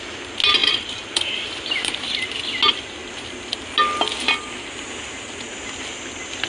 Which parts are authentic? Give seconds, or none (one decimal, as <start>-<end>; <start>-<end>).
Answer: 0.0-0.6; 2.3-6.5